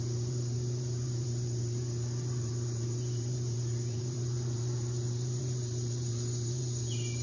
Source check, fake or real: fake